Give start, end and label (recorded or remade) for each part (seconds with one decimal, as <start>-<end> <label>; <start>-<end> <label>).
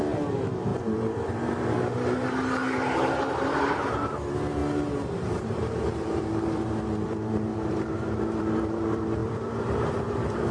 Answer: 0.0-4.6 remade; 4.6-5.3 recorded; 5.3-10.5 remade